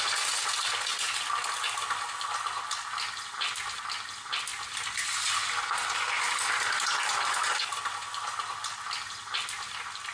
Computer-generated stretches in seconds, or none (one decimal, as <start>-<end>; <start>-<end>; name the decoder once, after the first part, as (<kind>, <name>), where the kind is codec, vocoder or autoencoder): none